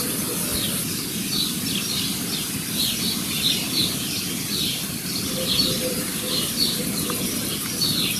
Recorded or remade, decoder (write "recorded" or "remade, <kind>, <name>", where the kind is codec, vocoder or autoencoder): recorded